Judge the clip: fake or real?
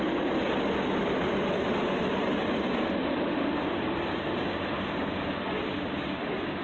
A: real